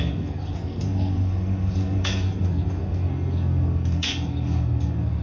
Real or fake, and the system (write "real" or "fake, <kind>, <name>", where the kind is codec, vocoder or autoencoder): fake, codec, SNAC